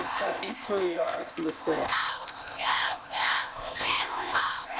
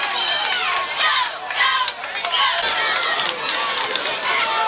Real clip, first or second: second